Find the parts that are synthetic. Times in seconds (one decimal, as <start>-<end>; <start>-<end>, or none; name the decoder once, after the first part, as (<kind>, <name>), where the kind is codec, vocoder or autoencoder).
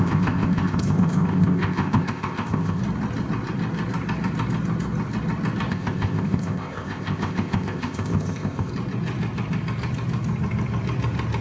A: 0.0-2.8 (codec, ZipCodec); 5.7-8.7